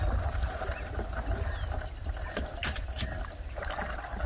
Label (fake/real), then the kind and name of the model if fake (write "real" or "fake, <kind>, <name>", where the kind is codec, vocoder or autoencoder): real